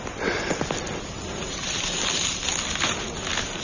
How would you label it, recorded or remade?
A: recorded